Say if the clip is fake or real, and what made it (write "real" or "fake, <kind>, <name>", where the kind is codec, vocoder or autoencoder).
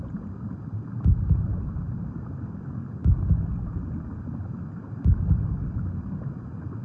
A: real